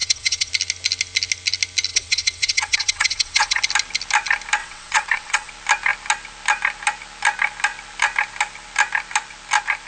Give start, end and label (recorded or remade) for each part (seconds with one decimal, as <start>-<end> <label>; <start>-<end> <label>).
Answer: 0.0-0.5 remade; 0.5-1.9 recorded; 1.9-3.6 remade; 3.6-4.6 recorded; 4.6-5.5 remade; 5.5-9.9 recorded